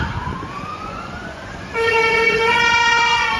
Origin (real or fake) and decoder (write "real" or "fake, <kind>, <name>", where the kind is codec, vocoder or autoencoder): fake, vocoder, Vocos